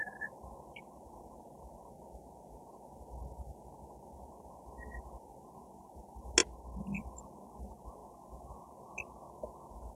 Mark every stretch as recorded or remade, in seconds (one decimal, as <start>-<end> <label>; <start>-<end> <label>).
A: 0.0-9.9 recorded